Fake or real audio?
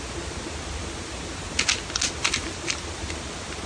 real